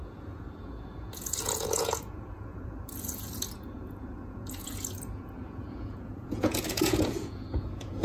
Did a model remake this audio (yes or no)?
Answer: yes